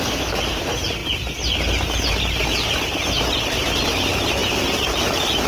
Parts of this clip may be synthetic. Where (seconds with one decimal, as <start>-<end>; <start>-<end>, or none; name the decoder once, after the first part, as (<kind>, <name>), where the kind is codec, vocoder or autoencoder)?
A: 0.0-1.0 (vocoder, BigVGAN v2); 2.1-5.5